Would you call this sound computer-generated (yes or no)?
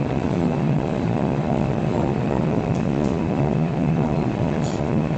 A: yes